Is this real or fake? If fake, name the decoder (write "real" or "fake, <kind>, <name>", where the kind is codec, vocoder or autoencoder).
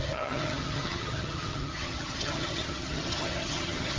fake, vocoder, HiFi-GAN